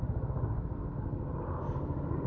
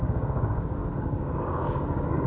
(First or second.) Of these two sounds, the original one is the first